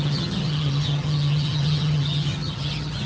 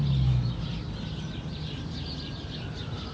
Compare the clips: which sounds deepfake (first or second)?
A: first